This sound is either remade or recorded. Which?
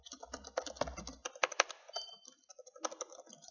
recorded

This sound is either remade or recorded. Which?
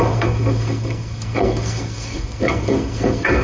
remade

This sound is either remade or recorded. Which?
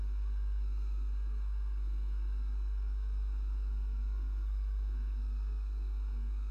remade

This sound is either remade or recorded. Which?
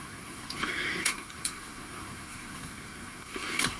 remade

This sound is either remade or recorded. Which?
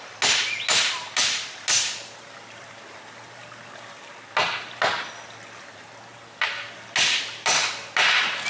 recorded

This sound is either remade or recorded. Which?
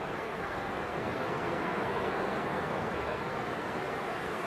remade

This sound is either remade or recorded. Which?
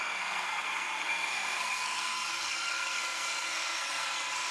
remade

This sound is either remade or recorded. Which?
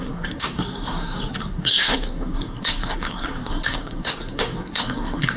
remade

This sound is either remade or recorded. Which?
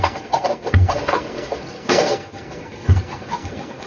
remade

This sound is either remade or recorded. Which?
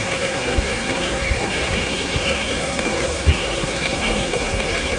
remade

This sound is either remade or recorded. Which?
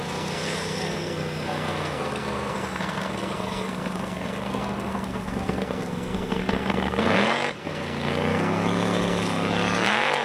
remade